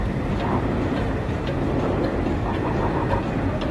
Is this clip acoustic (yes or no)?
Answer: no